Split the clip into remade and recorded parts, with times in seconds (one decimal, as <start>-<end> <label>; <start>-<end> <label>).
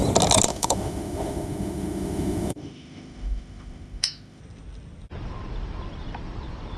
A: 0.0-0.5 recorded; 0.5-4.4 remade; 4.4-6.8 recorded